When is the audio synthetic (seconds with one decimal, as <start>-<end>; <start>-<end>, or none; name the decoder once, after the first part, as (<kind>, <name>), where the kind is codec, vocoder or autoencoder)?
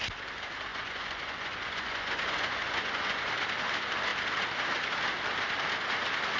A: 0.7-3.3 (vocoder, Vocos)